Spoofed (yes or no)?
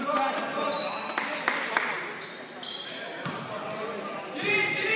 no